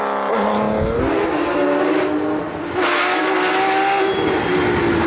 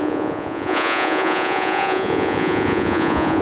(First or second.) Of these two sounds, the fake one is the second